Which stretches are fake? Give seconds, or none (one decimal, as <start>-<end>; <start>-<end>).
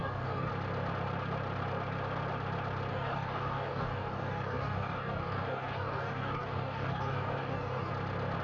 0.0-0.5; 2.9-7.9